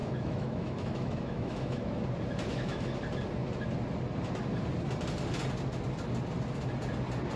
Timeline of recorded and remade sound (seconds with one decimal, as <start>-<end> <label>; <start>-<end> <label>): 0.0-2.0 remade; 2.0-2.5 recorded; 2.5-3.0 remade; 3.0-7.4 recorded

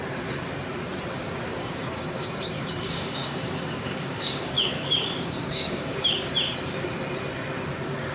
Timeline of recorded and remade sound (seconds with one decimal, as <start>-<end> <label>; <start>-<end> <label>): 0.0-1.5 recorded; 1.5-6.3 remade; 6.3-8.1 recorded

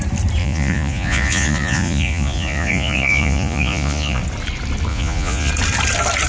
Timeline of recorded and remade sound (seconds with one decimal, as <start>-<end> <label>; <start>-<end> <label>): 0.0-0.4 recorded; 0.4-4.2 remade; 4.2-4.9 recorded; 4.9-5.5 remade; 5.5-6.3 recorded